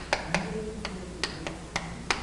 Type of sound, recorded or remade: recorded